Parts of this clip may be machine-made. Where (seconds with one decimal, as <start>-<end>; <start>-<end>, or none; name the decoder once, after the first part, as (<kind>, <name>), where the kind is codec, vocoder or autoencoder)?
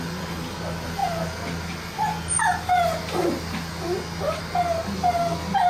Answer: none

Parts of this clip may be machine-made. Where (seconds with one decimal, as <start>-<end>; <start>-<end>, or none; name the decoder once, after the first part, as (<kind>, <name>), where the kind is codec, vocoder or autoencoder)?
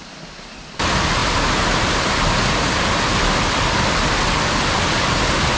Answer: none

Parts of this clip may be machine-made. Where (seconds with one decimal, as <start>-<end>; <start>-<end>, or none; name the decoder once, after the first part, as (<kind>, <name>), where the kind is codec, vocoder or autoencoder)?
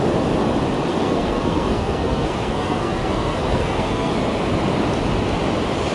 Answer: 0.9-4.1 (codec, SNAC)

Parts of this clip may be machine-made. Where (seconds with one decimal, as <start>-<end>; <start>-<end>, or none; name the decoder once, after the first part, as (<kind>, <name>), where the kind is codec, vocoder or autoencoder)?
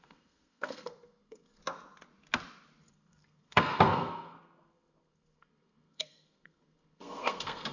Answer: 0.0-1.6 (codec, SNAC); 2.9-7.7